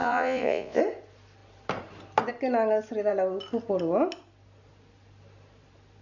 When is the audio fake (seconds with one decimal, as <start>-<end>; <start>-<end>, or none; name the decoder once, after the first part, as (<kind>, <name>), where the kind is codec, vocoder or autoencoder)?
0.0-0.8 (vocoder, Vocos)